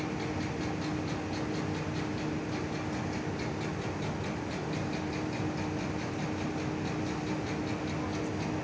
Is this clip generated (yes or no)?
no